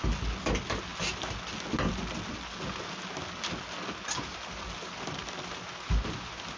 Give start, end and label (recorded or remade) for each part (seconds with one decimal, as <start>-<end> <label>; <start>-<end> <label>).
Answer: 0.0-6.6 recorded